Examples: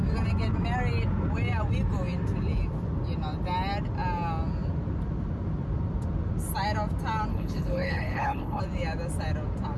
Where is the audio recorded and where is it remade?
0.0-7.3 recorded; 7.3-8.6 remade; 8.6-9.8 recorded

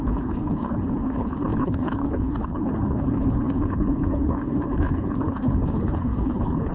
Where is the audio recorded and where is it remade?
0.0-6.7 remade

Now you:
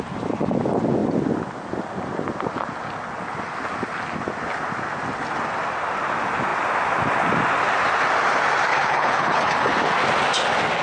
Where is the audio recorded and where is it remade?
0.0-8.7 recorded; 8.7-9.7 remade; 9.7-10.8 recorded

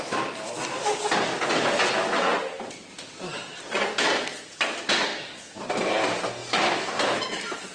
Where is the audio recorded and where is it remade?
0.0-7.7 recorded